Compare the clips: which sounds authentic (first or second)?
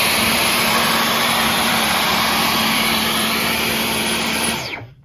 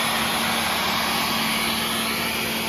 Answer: second